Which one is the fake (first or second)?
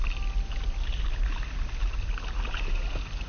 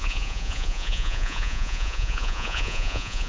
second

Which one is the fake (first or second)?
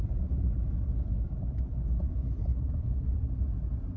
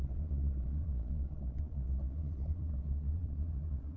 second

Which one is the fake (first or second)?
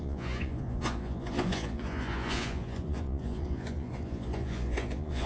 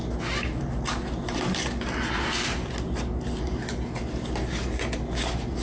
first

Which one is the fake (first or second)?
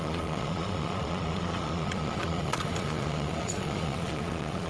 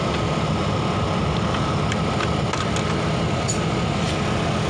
first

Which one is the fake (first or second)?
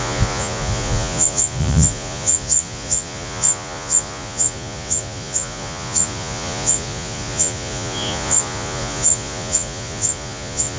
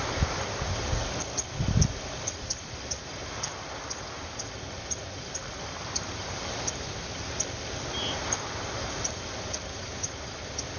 first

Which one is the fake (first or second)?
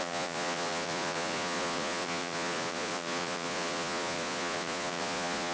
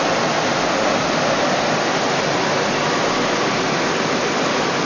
first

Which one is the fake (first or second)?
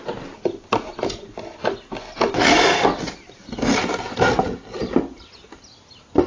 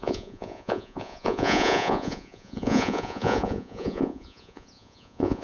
second